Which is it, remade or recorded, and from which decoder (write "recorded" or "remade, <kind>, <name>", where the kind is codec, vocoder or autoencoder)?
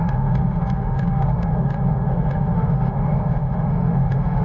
remade, autoencoder, DAC-VAE